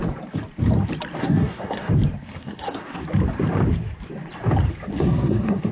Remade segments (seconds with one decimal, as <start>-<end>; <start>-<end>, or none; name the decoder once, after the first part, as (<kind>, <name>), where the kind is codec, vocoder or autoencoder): 1.2-1.9 (codec, SNAC); 2.3-3.0; 4.9-5.7